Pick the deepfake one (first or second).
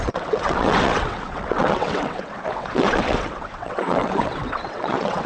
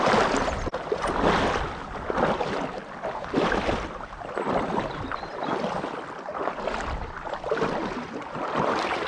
first